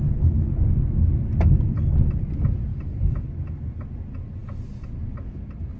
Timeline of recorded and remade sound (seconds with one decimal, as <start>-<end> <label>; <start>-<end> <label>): 0.0-5.8 recorded